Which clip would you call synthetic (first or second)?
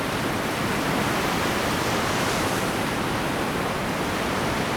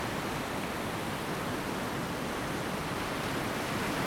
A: first